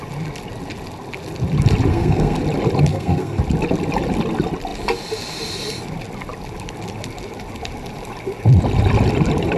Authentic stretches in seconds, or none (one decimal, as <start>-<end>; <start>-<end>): 0.0-1.9; 2.4-2.9; 3.4-9.6